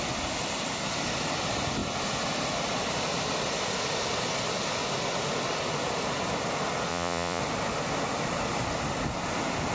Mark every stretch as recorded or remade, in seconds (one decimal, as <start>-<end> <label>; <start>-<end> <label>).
0.0-6.9 recorded; 6.9-7.4 remade; 7.4-9.7 recorded